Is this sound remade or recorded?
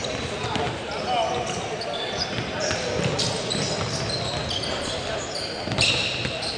recorded